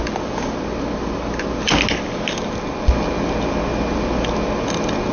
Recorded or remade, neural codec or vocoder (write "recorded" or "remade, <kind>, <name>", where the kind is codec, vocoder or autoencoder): recorded